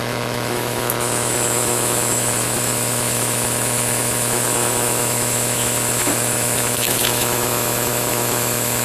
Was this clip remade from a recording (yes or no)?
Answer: yes